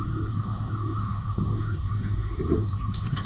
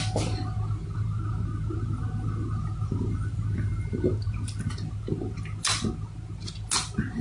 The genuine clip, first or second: second